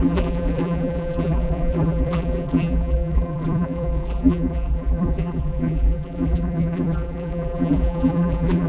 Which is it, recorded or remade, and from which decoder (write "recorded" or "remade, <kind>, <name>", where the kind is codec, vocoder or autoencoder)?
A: remade, vocoder, BigVGAN v2